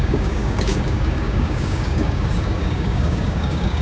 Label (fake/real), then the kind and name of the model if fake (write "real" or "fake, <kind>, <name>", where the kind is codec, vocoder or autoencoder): fake, codec, DAC